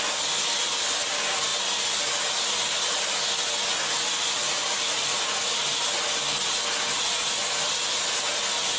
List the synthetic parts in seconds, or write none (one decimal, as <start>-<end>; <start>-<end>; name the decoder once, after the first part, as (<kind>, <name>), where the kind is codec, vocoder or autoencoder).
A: none